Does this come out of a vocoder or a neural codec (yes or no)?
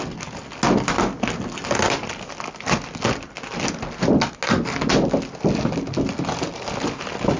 no